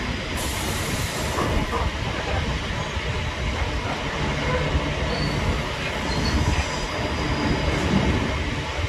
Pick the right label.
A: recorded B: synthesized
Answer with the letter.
A